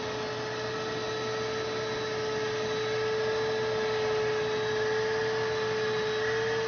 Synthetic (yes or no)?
no